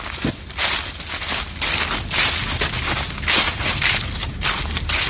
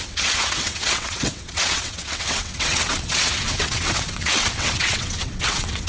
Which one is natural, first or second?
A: first